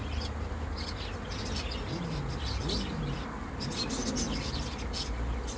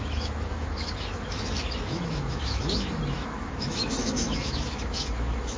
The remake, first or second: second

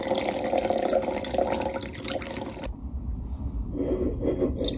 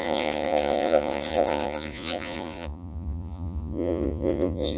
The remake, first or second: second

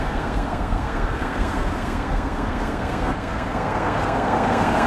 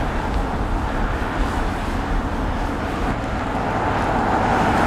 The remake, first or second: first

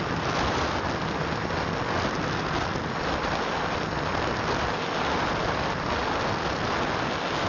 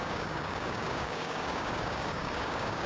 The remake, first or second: second